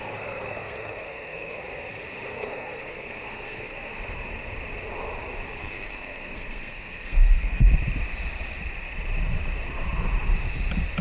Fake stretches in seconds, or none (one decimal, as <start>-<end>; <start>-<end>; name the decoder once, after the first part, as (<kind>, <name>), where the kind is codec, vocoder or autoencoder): 0.0-1.6 (codec, SNAC); 2.3-3.9; 5.6-7.6